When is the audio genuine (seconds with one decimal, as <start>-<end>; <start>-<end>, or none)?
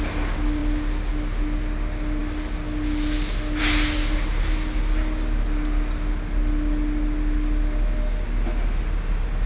0.0-9.5